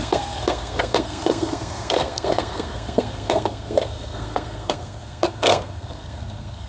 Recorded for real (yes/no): no